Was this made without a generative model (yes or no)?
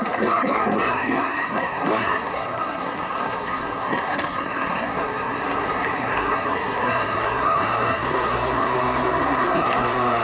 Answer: no